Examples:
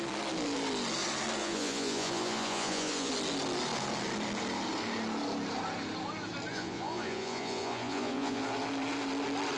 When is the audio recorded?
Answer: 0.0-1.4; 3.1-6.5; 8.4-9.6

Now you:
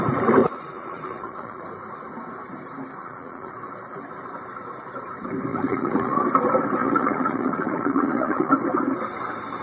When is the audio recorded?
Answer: 0.0-0.4; 1.6-3.0; 3.5-5.5; 6.2-6.8; 8.5-9.6

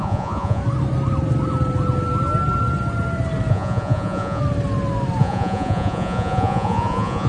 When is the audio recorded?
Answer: 0.6-3.5; 4.4-5.2

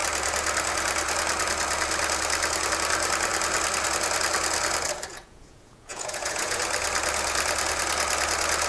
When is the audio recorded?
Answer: 0.0-5.1; 6.6-8.7

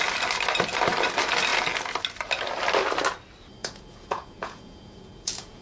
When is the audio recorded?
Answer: 0.0-3.6